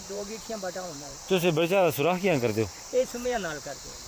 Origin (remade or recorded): remade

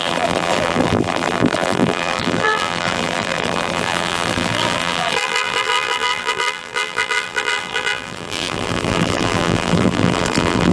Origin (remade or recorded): remade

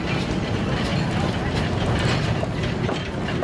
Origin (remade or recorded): recorded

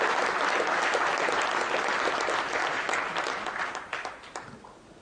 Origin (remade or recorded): recorded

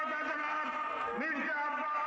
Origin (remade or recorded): recorded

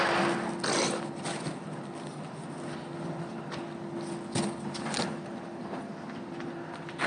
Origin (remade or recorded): recorded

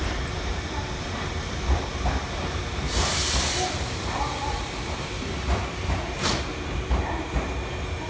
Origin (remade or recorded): remade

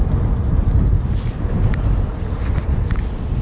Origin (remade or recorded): recorded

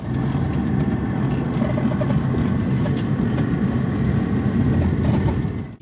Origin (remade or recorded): recorded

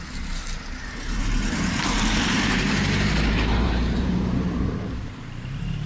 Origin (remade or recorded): remade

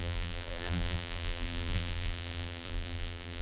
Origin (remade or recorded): remade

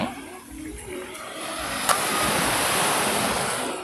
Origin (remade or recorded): remade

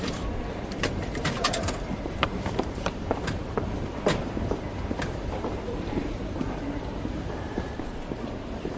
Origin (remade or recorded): remade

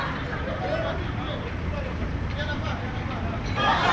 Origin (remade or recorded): recorded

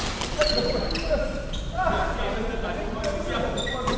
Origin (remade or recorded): recorded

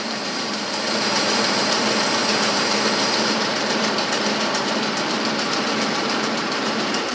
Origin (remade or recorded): remade